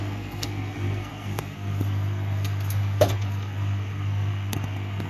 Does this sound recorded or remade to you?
remade